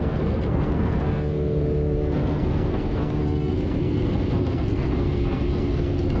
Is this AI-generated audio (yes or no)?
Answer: yes